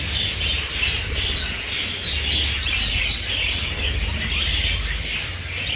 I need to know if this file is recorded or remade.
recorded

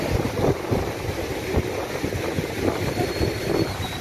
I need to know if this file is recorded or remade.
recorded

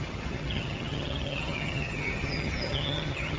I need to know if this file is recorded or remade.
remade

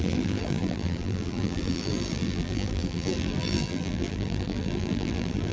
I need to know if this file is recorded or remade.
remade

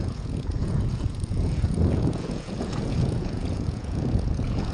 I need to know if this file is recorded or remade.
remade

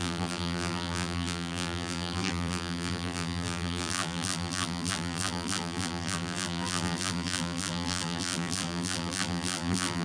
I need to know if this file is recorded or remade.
remade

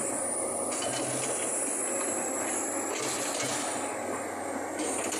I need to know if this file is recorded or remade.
recorded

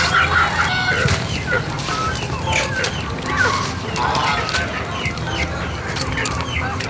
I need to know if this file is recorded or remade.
recorded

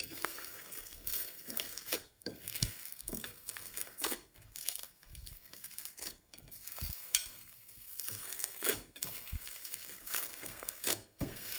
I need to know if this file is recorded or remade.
remade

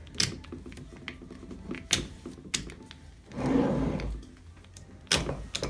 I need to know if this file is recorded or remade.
recorded